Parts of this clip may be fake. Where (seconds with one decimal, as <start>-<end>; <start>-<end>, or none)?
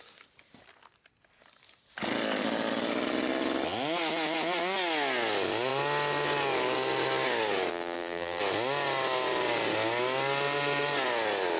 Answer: 7.7-8.4